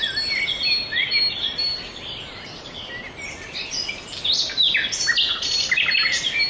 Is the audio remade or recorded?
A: recorded